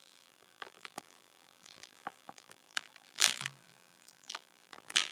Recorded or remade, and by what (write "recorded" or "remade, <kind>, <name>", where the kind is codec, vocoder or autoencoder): remade, vocoder, BigVGAN v2